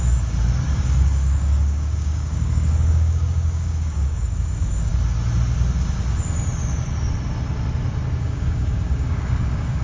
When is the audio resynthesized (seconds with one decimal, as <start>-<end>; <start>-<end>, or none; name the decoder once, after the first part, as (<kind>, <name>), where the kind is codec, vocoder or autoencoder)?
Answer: 0.7-4.9 (codec, DAC); 8.2-9.8